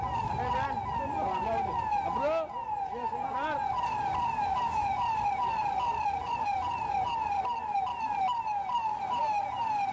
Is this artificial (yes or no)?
no